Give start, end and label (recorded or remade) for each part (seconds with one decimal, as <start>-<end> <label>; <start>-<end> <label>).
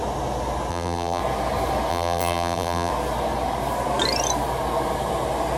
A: 0.0-0.7 recorded; 0.7-1.2 remade; 1.2-1.9 recorded; 1.9-2.9 remade; 2.9-5.6 recorded